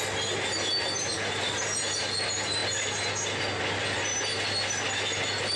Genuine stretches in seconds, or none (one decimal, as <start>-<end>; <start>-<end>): 0.0-5.6